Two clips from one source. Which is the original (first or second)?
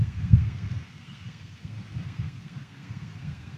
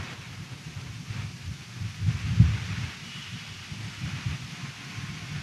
second